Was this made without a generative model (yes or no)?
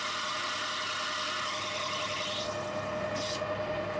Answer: yes